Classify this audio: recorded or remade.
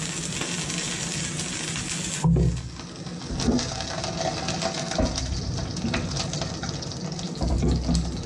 recorded